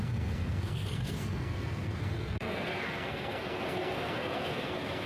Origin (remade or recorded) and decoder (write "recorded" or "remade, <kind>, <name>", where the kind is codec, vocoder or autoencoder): remade, codec, SNAC